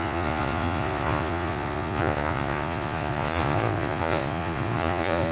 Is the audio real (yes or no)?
no